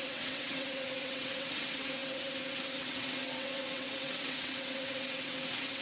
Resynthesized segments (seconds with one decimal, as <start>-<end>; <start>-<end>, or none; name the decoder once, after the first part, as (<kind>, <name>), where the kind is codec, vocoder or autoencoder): 0.0-5.8 (vocoder, WaveNeXt)